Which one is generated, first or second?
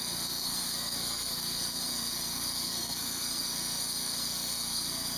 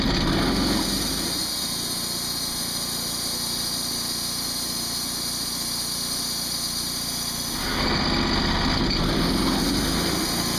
first